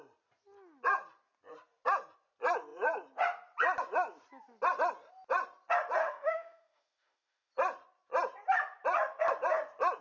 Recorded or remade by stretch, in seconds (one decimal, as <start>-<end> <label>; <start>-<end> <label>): 0.0-6.0 recorded; 6.0-7.5 remade; 7.5-10.0 recorded